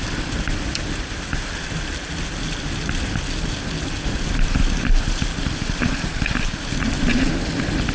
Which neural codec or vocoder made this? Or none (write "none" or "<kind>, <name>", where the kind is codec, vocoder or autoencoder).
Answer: none